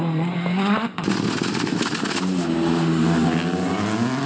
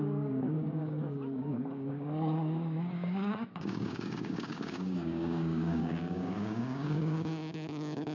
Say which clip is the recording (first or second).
first